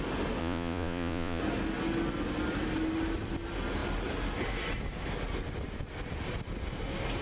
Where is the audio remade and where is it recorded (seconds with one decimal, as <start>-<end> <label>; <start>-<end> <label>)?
0.0-0.4 recorded; 0.4-1.4 remade; 1.4-7.2 recorded